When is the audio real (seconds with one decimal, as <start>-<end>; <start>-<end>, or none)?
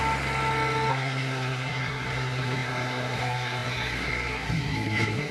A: 0.0-0.9